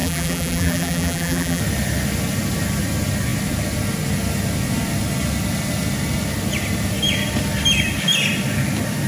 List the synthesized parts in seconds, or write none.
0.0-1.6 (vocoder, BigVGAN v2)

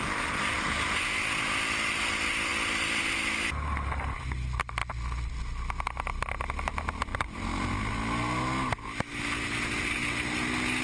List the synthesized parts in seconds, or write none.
7.1-7.7 (vocoder, BigVGAN v2)

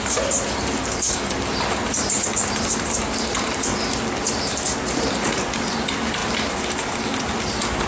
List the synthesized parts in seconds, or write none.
0.0-3.7 (vocoder, BigVGAN v2); 4.3-7.9